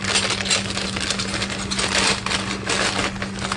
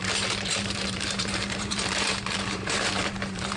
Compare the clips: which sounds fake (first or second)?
second